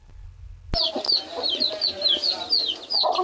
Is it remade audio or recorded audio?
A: recorded